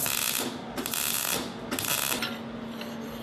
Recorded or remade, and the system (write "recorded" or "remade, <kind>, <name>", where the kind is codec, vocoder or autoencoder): recorded